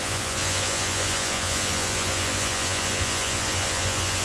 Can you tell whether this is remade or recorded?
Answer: remade